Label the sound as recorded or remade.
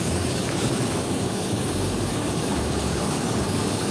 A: remade